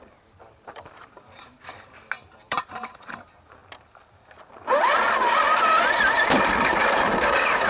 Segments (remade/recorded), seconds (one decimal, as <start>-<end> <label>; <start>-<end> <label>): 0.0-3.6 remade; 3.6-6.7 recorded; 6.7-7.7 remade